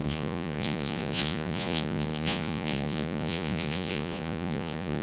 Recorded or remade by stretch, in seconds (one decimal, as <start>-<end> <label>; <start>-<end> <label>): 0.0-5.0 remade